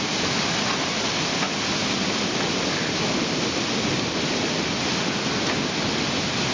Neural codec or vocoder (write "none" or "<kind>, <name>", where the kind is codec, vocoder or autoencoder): none